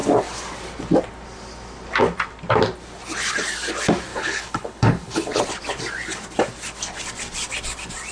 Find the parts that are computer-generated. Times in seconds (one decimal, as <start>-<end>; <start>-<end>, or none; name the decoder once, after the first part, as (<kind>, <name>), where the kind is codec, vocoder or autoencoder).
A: 4.1-5.4 (codec, HILCodec)